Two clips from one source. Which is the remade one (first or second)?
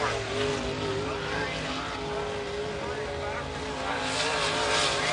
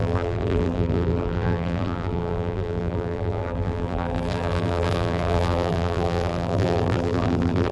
second